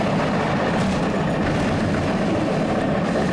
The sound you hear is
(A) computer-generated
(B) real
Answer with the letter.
B